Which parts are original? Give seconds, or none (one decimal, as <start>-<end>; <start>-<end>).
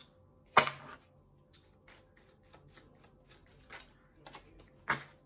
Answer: 0.0-5.3